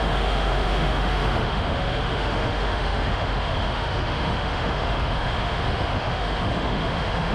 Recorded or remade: remade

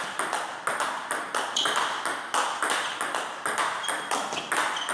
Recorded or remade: recorded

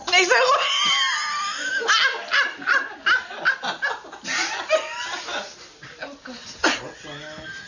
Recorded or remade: recorded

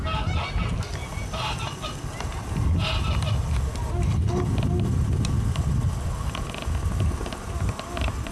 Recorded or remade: recorded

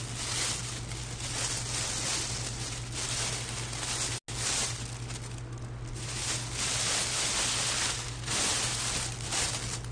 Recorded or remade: recorded